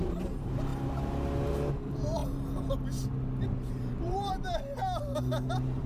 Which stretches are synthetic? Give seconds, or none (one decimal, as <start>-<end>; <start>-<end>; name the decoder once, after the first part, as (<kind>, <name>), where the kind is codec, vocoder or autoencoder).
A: 0.0-0.7 (vocoder, BigVGAN v2); 1.5-2.2; 3.7-4.4; 5.0-5.9